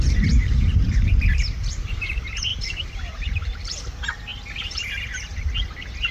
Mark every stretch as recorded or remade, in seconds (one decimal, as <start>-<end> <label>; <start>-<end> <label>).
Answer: 0.0-0.4 recorded; 0.4-1.2 remade; 1.2-2.5 recorded; 2.5-3.8 remade; 3.8-6.1 recorded